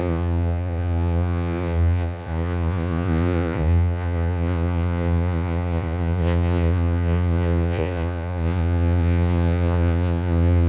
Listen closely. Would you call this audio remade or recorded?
remade